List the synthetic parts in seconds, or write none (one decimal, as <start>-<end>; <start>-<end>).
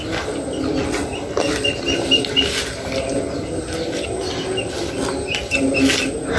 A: none